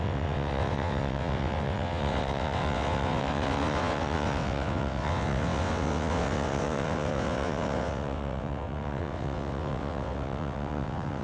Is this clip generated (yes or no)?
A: yes